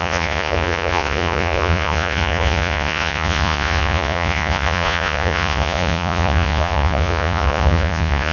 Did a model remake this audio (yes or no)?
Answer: yes